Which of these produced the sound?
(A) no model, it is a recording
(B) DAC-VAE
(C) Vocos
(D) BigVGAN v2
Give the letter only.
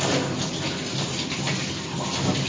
A